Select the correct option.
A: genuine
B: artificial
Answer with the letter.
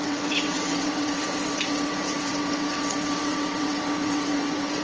B